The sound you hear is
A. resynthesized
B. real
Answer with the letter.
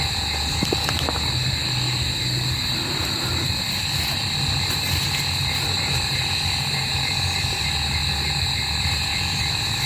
B